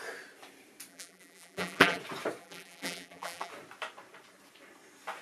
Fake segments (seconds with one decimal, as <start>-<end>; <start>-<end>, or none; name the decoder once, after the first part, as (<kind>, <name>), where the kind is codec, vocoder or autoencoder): 0.9-2.0 (vocoder, BigVGAN v2); 2.4-3.5

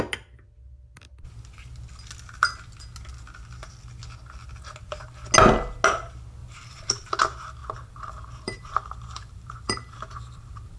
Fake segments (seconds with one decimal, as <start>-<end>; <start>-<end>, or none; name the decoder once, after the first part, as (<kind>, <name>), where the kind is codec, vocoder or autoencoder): 6.4-7.1 (vocoder, BigVGAN v2); 7.6-10.8